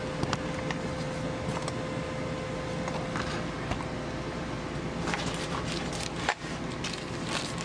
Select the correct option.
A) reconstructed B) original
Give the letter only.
B